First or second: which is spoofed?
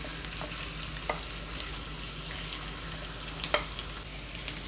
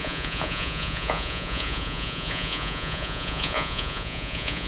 second